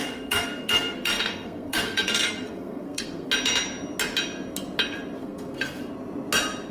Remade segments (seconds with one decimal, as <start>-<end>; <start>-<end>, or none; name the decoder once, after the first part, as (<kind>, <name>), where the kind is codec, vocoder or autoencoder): 0.0-3.3 (codec, SNAC); 5.2-5.8